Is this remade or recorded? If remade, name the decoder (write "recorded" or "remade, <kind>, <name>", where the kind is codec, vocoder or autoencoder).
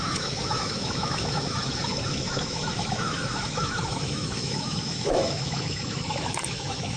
remade, autoencoder, DAC-VAE